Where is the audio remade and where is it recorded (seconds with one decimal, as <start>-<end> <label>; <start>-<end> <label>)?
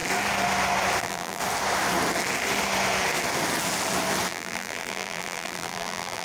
0.0-1.0 recorded; 1.0-1.4 remade; 1.4-4.3 recorded; 4.3-6.2 remade